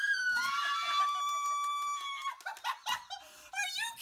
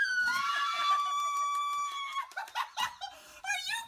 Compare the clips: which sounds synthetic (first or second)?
second